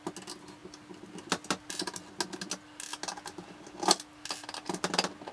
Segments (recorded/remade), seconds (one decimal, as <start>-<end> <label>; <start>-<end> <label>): 0.0-5.3 recorded